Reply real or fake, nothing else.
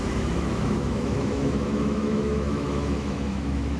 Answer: fake